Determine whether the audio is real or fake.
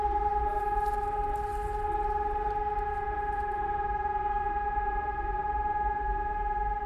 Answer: fake